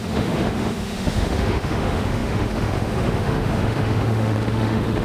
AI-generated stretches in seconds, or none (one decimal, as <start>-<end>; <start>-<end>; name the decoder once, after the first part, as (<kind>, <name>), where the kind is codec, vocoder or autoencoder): 0.0-5.0 (autoencoder, DAC-VAE)